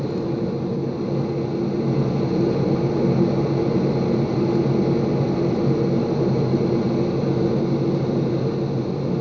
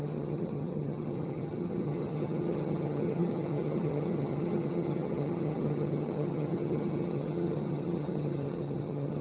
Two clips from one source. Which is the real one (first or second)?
first